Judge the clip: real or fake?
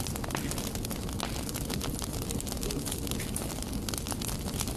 real